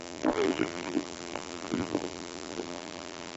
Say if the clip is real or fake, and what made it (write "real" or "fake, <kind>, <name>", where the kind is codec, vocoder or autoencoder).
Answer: fake, vocoder, BigVGAN v2